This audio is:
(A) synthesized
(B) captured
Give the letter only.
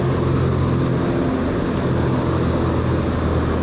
B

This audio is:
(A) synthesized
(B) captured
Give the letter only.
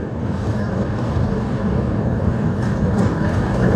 A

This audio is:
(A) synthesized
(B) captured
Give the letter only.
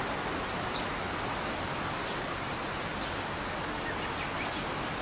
A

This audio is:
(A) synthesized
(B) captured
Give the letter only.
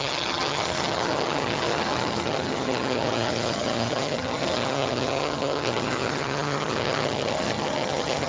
A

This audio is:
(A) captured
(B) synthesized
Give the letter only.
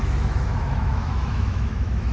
B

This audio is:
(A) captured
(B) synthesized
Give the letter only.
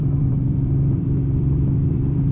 B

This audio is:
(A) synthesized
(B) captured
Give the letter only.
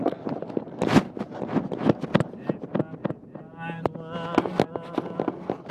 B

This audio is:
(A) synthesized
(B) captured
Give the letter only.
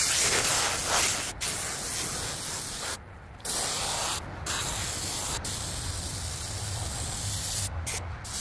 B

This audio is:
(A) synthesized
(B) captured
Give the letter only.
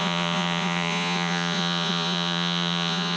A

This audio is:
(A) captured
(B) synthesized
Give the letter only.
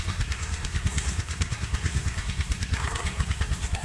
B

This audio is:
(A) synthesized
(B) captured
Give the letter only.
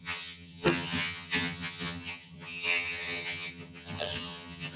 A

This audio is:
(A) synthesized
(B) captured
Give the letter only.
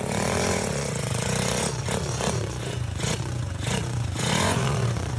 A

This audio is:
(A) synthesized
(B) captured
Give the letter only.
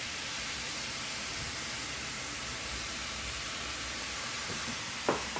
A